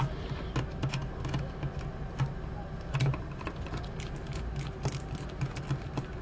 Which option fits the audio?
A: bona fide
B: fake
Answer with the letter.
A